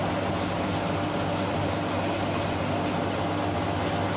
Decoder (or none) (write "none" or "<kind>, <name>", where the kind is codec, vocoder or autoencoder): none